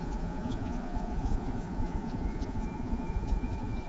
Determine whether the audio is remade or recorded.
remade